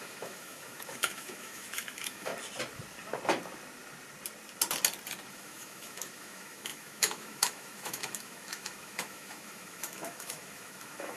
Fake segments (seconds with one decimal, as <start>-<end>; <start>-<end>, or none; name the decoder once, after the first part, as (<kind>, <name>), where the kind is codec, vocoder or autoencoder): 0.0-2.3 (autoencoder, DAC-VAE); 5.3-11.2